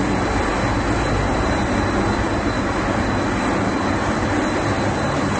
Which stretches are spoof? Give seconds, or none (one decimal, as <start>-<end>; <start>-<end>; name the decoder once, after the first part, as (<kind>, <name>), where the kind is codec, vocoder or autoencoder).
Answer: none